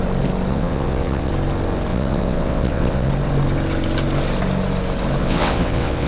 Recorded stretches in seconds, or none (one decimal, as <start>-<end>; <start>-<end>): 0.0-0.5; 1.3-1.9; 3.1-5.2